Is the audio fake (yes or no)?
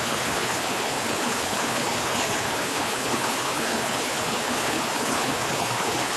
yes